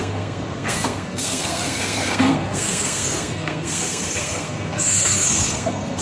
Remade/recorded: remade